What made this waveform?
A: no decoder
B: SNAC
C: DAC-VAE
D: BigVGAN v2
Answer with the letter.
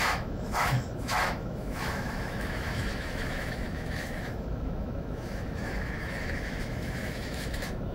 C